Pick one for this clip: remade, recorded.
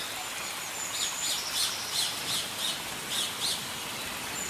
recorded